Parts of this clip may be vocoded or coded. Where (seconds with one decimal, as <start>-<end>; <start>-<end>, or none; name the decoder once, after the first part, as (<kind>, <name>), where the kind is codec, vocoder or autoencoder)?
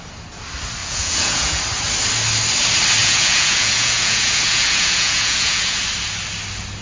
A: 0.8-1.6 (vocoder, Vocos); 3.0-5.8